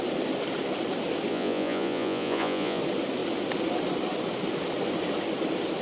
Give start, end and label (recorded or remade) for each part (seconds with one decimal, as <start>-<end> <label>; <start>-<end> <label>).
0.0-1.3 recorded; 1.3-2.8 remade; 2.8-5.8 recorded